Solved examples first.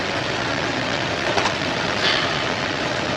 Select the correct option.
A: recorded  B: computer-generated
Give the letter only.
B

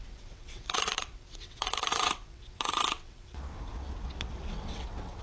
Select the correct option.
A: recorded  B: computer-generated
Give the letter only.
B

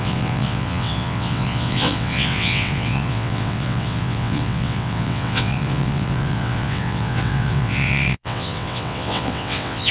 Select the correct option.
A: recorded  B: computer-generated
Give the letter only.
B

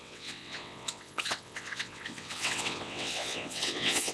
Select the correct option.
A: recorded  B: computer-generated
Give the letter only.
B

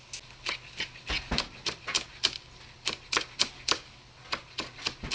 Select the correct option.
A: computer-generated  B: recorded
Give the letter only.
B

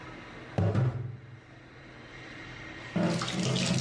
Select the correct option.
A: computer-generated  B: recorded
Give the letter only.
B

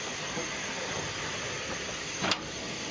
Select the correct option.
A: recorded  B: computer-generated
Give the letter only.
A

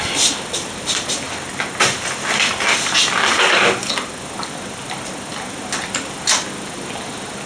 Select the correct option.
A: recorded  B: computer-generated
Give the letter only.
A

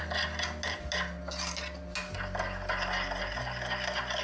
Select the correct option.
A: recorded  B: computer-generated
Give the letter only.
A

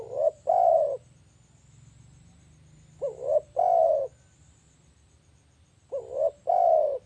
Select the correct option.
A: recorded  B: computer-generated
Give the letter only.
A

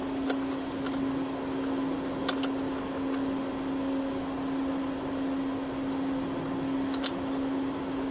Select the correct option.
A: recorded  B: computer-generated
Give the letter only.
A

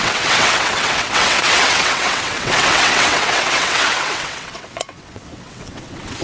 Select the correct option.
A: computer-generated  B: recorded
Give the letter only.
A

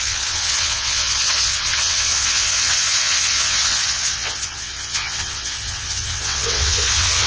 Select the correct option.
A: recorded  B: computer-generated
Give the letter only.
B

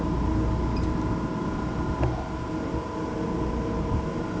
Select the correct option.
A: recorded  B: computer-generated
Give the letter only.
A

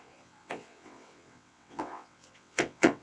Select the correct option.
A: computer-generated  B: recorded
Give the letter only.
A